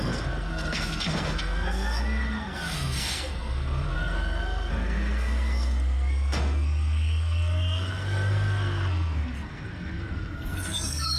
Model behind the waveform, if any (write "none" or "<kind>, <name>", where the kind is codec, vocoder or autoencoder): codec, SNAC